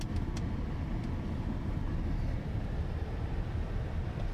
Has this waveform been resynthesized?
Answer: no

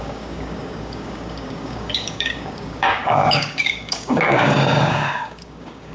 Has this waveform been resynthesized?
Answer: yes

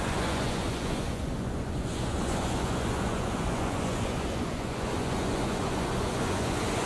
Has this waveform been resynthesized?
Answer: yes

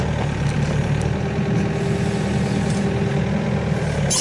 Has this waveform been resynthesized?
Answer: no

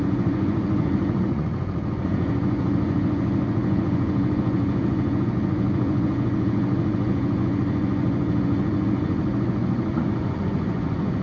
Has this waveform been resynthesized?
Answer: yes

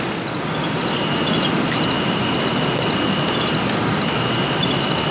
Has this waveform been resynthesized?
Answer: no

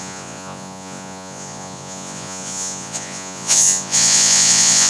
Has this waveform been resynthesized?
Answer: yes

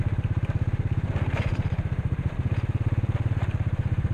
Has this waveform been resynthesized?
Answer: yes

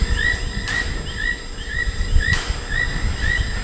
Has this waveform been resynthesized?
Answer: no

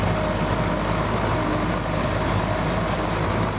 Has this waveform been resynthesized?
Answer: no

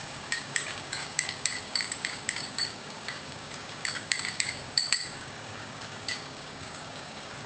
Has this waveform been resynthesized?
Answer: yes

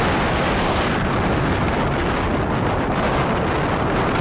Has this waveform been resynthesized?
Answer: no